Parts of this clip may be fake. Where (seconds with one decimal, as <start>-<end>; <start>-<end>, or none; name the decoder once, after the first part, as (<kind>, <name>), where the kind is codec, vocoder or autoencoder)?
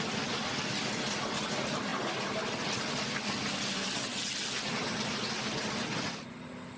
none